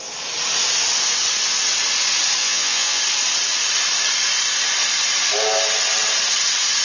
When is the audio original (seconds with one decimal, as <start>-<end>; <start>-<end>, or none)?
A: 0.0-2.4; 3.0-6.8